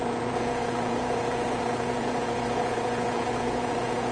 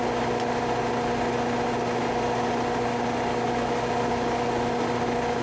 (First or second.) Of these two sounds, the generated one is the first